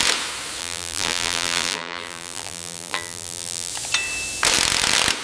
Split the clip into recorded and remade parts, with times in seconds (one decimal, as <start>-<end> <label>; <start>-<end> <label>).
0.0-0.6 recorded; 0.6-3.7 remade; 3.7-5.2 recorded